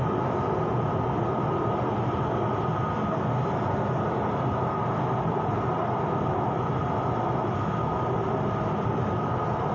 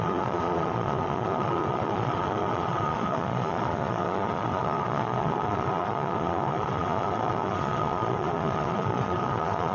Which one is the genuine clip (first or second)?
first